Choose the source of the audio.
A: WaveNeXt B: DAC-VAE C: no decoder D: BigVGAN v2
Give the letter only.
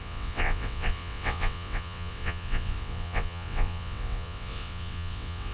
A